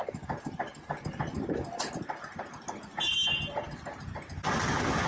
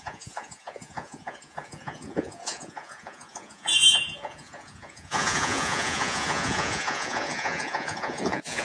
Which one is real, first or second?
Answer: first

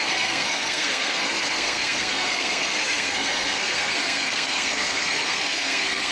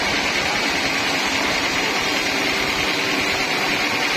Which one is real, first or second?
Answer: second